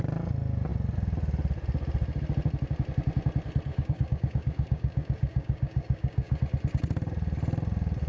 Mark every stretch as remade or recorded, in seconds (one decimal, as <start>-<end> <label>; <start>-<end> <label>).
0.0-3.7 recorded; 3.7-6.4 remade; 6.4-8.1 recorded